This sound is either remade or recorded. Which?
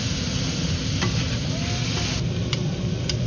recorded